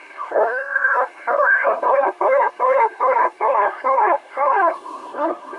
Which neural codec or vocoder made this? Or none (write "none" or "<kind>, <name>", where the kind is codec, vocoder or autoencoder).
codec, SNAC